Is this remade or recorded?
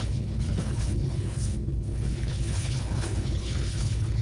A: remade